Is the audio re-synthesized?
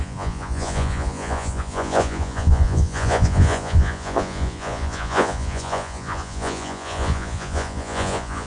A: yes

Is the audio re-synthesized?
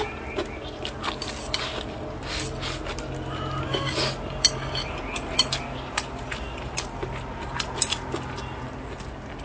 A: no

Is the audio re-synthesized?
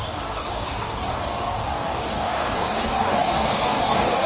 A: yes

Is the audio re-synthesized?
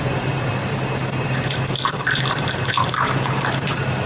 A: yes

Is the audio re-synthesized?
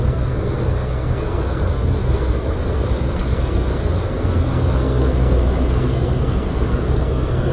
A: yes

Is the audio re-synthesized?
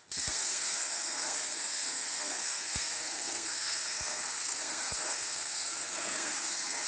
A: yes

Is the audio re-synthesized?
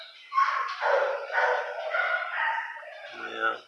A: yes